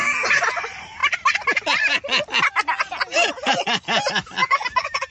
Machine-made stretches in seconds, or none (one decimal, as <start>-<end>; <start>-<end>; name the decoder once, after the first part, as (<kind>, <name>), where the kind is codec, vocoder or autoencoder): 4.4-5.1 (vocoder, BigVGAN v2)